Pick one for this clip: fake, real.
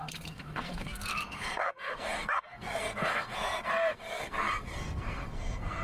fake